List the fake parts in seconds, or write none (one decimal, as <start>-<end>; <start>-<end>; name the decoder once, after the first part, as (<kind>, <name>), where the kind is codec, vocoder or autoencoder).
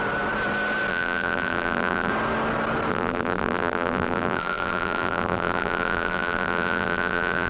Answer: 0.9-2.1 (vocoder, BigVGAN v2); 2.9-7.5